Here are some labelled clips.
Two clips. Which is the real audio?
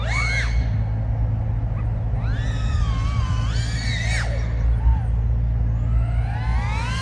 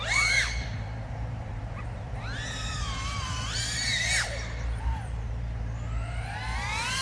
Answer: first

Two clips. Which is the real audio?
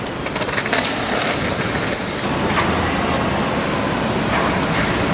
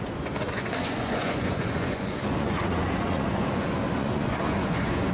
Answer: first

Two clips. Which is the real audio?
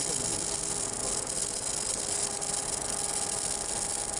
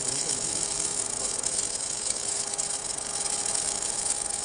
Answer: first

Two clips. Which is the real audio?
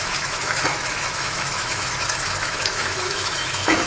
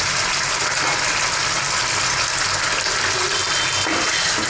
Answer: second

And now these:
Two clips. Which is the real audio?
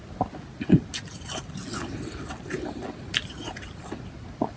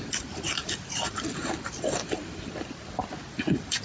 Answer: first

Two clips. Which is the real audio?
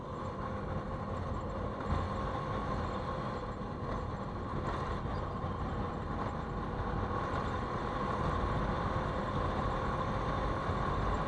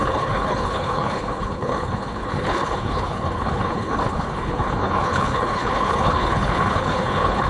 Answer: first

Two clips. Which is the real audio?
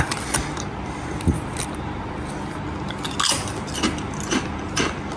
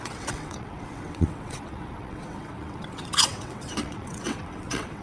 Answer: first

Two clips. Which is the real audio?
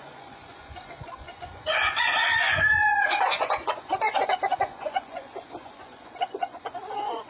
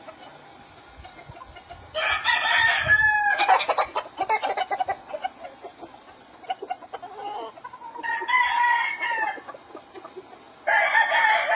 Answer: second